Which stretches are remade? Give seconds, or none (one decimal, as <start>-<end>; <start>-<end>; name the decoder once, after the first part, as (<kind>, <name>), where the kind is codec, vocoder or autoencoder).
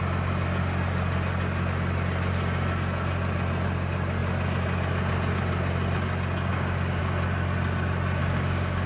6.5-7.0 (codec, DAC); 8.2-8.9